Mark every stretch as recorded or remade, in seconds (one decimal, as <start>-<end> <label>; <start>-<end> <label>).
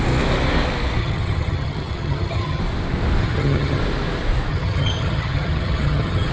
0.0-1.0 recorded; 1.0-2.6 remade; 2.6-3.2 recorded; 3.2-3.8 remade; 3.8-4.5 recorded; 4.5-6.3 remade